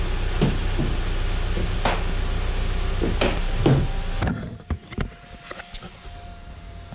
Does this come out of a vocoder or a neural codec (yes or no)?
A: no